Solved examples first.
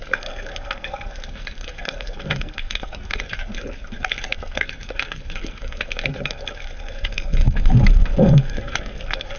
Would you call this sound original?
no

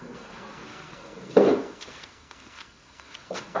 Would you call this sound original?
no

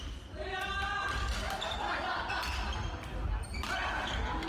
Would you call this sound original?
yes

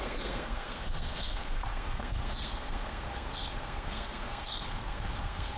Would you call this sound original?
no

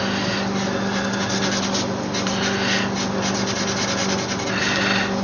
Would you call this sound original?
yes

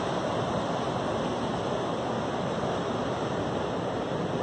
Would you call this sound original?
yes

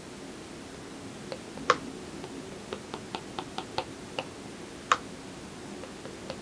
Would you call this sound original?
yes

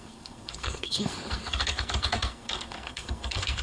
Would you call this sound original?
no